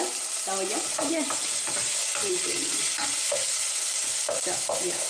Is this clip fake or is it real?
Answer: real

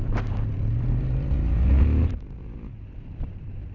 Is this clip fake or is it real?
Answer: fake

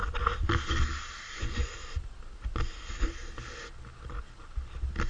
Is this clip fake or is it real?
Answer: real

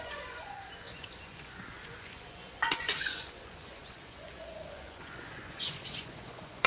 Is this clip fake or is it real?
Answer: fake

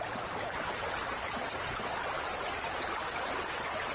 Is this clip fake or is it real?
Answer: real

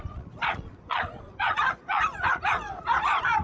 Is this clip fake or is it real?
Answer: fake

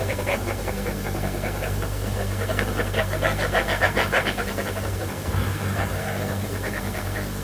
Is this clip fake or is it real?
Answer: fake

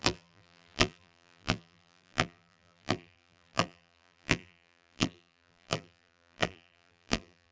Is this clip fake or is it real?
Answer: fake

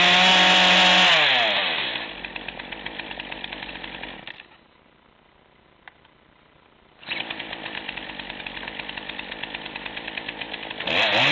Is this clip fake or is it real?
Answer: real